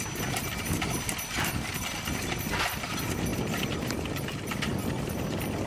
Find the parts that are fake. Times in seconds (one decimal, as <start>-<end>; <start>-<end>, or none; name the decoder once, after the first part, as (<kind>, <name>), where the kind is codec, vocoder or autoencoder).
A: 3.3-5.7 (vocoder, BigVGAN v2)